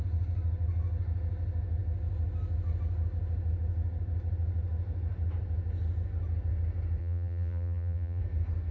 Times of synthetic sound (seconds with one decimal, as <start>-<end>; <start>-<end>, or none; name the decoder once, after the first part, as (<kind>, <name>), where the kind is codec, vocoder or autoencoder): 7.0-8.2 (vocoder, BigVGAN v2)

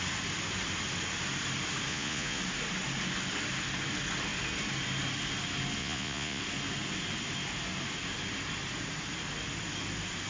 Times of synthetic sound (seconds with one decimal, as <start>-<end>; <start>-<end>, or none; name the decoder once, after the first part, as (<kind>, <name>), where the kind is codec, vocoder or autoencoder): 1.9-2.4 (vocoder, Vocos); 5.8-6.4

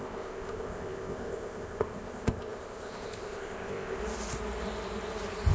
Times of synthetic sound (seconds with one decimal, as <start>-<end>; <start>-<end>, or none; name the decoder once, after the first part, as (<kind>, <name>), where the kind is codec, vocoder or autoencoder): 0.0-4.0 (codec, ZipCodec)

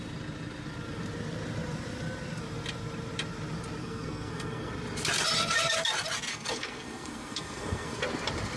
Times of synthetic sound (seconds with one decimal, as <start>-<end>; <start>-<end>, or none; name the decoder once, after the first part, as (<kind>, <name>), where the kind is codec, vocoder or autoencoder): 3.8-4.7 (codec, SNAC); 6.3-8.0

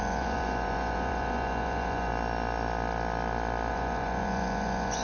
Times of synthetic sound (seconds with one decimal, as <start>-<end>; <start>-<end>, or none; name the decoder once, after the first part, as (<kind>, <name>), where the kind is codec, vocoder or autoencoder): 0.0-2.1 (vocoder, Vocos); 3.7-5.0

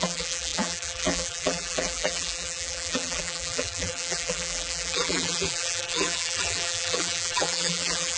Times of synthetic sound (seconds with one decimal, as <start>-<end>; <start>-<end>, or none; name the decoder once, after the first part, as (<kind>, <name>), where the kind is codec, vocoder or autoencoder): 0.0-8.2 (vocoder, BigVGAN v2)